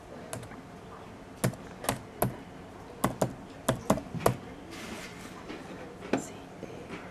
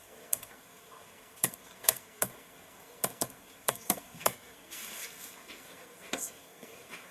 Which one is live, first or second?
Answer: first